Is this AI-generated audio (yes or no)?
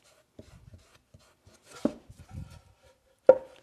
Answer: no